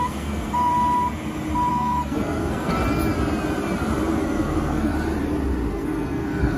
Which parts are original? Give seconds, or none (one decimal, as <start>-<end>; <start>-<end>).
0.7-1.7; 2.7-4.2; 4.9-5.7